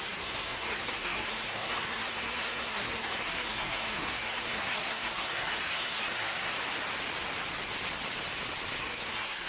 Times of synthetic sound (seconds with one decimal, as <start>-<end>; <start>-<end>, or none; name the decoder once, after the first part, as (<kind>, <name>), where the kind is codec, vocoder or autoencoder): 0.0-6.5 (codec, SNAC); 8.8-9.5